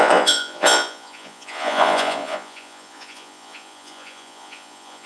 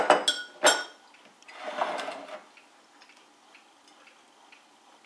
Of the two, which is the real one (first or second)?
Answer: second